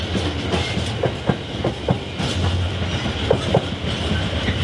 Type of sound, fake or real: real